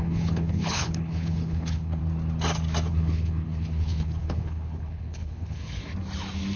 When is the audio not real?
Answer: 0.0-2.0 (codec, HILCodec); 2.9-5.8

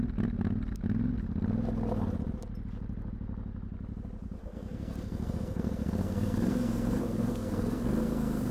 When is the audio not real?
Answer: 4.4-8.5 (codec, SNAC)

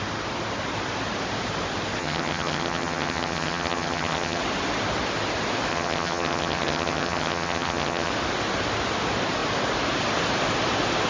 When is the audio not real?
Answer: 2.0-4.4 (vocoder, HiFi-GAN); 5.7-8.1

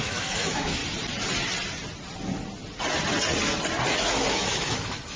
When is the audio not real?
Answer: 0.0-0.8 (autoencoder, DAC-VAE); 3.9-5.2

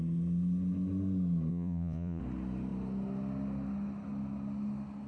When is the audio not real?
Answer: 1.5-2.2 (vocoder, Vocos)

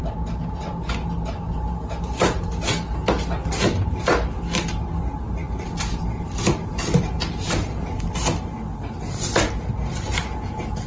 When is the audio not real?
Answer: none

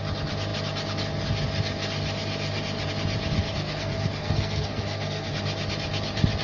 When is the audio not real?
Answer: 3.4-5.3 (codec, SNAC)